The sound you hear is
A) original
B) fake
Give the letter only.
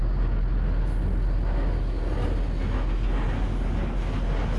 A